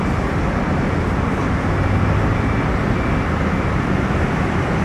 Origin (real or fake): real